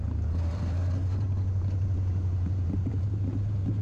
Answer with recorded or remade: remade